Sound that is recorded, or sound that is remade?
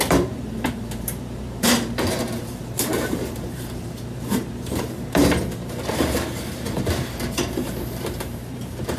remade